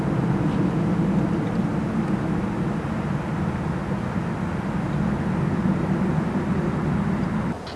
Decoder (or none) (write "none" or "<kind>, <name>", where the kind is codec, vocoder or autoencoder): none